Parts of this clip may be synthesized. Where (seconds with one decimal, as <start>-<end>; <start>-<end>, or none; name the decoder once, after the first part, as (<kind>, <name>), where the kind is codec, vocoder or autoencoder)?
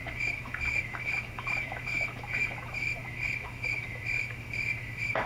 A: 0.0-5.3 (autoencoder, DAC-VAE)